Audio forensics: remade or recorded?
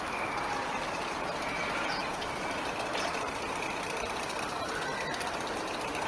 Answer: recorded